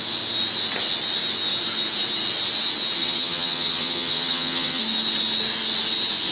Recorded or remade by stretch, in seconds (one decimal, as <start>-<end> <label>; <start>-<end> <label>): 0.0-3.0 recorded; 3.0-4.8 remade; 4.8-6.3 recorded